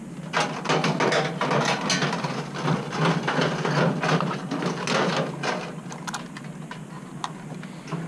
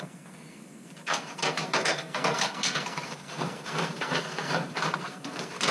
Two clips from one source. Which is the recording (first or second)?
first